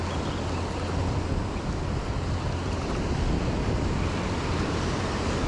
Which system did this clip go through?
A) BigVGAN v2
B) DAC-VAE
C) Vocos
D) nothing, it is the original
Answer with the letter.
D